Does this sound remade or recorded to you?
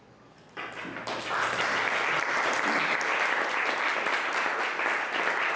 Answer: recorded